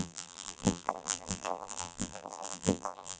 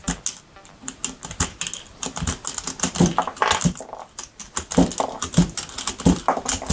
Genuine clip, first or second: second